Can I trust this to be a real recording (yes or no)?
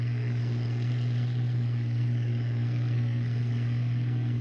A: no